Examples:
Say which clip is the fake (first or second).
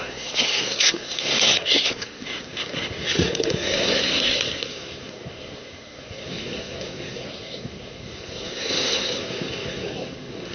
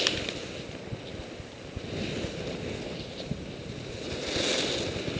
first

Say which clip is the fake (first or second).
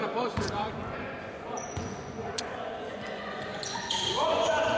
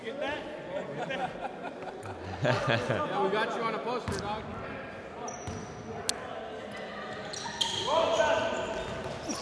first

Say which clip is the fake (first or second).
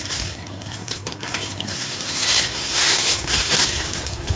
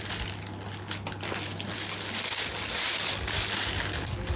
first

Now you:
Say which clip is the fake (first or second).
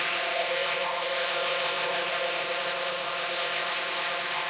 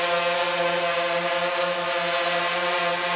first